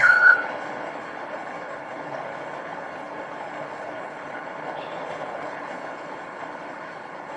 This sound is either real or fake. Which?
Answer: fake